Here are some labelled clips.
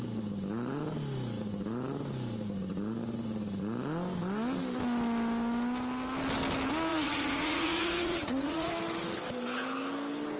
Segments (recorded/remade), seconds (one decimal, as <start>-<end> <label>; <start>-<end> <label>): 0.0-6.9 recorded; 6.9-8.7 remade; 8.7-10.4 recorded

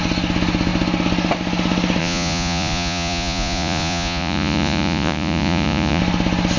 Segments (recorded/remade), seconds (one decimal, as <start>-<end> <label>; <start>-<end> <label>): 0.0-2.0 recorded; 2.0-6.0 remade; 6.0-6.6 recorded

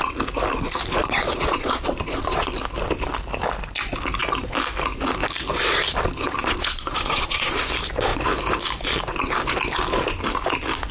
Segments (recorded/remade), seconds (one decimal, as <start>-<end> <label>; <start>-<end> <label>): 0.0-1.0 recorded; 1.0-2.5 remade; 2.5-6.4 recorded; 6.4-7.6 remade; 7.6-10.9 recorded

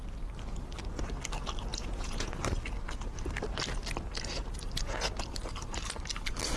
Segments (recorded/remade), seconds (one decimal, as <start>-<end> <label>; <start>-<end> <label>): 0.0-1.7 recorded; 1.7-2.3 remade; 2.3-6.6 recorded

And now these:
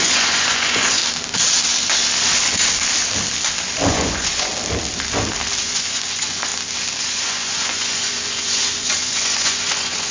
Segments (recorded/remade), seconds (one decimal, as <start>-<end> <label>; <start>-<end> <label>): 0.0-1.0 remade; 1.0-3.9 recorded; 3.9-4.5 remade; 4.5-5.6 recorded; 5.6-6.5 remade; 6.5-7.0 recorded; 7.0-10.1 remade

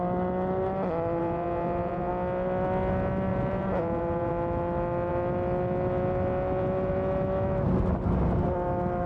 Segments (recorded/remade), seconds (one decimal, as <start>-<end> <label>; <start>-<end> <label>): 0.0-1.2 recorded; 1.2-2.1 remade; 2.1-3.3 recorded; 3.3-4.3 remade; 4.3-9.1 recorded